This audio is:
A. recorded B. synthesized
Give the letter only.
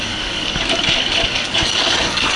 B